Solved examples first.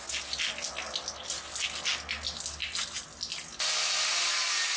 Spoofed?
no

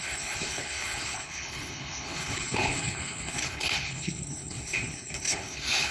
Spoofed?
yes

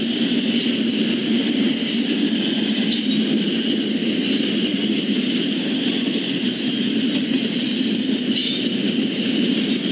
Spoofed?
no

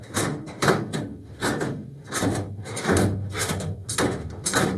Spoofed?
yes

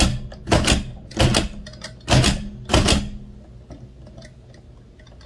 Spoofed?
no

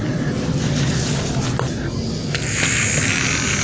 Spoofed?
no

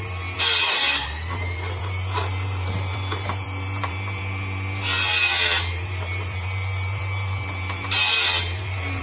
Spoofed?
yes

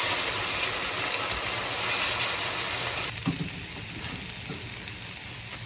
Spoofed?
no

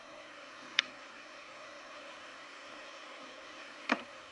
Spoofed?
yes